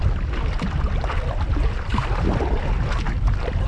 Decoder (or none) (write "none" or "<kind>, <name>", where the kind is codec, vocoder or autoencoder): none